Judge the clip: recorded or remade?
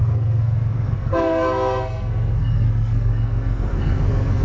remade